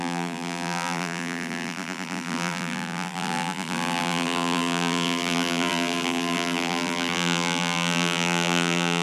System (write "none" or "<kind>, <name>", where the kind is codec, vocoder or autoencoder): vocoder, BigVGAN v2